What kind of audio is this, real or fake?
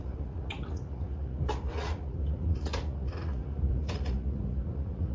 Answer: fake